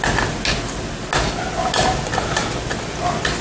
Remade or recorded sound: recorded